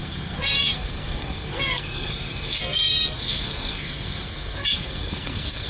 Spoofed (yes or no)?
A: yes